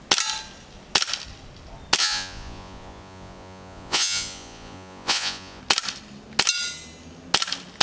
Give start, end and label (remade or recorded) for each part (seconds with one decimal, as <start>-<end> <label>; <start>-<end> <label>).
0.0-2.0 recorded; 2.0-5.6 remade; 5.6-7.8 recorded